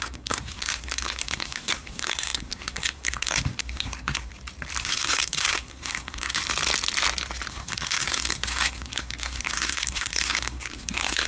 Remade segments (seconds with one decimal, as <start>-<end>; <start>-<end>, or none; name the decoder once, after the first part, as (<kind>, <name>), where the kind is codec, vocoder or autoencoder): 0.0-4.3 (codec, SNAC); 4.8-6.4; 7.5-11.3